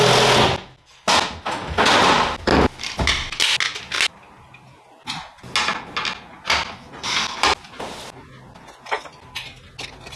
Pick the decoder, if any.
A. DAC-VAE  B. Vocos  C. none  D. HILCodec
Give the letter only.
C